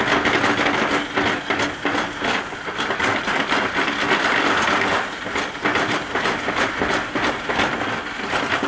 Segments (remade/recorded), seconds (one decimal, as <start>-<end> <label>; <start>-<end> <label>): 0.0-8.7 recorded